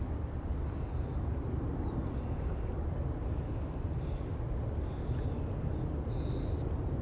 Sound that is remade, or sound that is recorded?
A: recorded